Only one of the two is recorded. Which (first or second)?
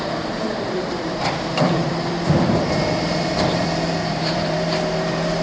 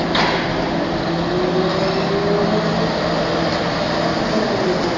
second